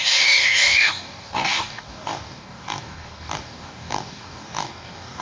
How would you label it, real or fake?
fake